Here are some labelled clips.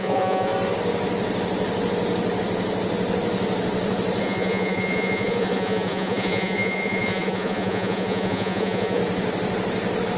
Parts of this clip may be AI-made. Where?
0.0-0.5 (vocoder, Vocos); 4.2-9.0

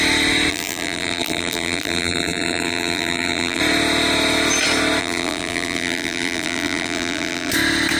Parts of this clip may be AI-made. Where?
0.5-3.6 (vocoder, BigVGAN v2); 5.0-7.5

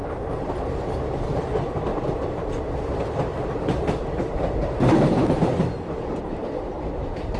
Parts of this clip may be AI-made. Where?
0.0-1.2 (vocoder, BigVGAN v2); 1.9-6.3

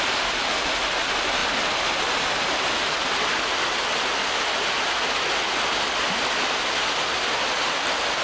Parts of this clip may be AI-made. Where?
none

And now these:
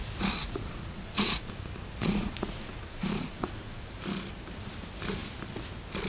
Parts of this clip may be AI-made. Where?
0.4-1.5 (vocoder, Vocos); 2.0-3.9